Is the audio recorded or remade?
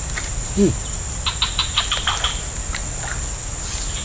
remade